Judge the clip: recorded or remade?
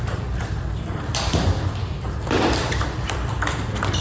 remade